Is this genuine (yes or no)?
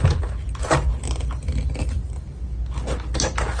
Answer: yes